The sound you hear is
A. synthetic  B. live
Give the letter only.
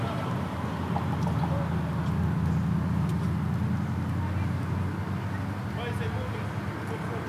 B